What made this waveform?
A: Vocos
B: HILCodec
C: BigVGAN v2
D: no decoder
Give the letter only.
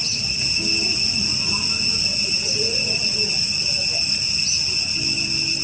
D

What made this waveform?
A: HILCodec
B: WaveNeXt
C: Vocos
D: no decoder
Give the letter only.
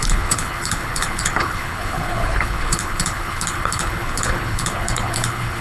A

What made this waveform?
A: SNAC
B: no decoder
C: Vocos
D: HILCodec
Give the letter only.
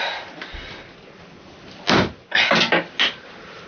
B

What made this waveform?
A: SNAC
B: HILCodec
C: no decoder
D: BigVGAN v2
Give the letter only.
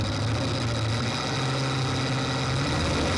C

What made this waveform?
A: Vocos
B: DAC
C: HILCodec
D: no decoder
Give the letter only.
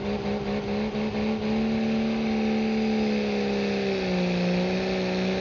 D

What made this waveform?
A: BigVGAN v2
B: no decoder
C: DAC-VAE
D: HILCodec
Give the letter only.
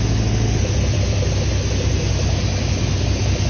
B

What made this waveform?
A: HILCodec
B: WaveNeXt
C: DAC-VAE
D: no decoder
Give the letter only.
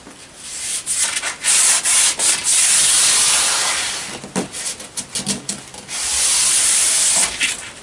D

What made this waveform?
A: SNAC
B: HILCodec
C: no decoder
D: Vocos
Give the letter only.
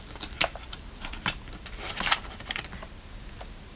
C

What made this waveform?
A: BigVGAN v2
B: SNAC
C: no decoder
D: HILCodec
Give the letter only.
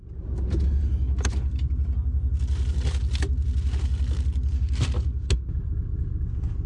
C